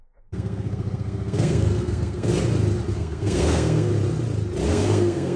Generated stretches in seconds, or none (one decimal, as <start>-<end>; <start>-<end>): 0.0-2.3; 2.9-3.9; 4.7-5.4